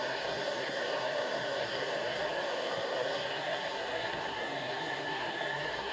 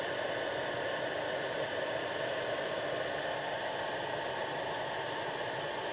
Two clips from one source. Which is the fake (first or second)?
first